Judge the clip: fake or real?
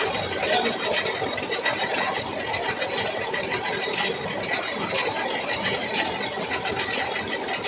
real